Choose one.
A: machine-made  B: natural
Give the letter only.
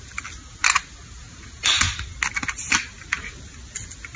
B